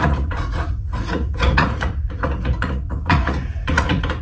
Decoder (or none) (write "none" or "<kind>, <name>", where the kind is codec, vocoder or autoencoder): vocoder, Vocos